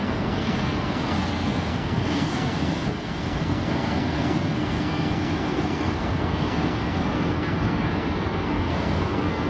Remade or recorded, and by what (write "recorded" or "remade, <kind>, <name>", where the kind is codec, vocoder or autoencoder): remade, codec, SNAC